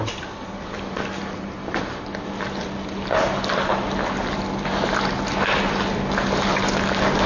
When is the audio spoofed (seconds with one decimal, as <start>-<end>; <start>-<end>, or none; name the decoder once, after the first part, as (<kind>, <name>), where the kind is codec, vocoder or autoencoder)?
0.0-0.9 (vocoder, BigVGAN v2)